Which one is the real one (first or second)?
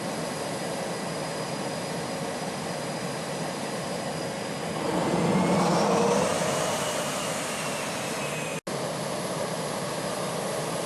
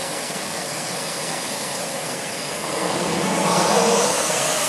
first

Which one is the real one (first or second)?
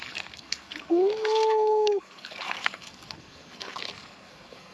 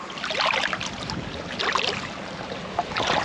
second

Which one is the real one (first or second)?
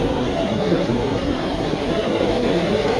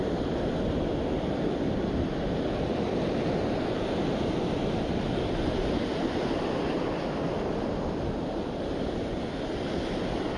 second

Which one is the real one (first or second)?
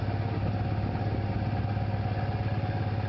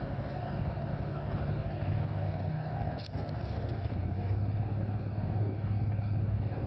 first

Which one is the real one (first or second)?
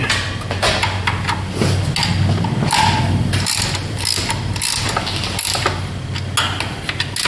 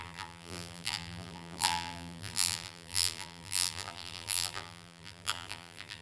first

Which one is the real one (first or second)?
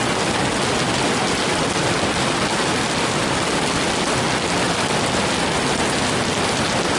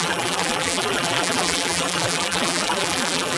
first